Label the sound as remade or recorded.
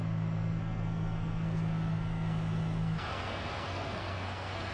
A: remade